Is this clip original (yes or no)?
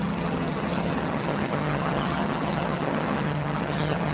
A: no